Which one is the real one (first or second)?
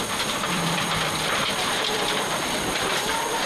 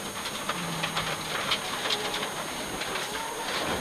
second